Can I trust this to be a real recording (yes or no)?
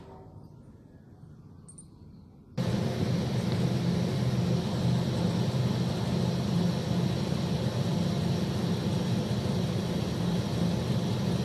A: yes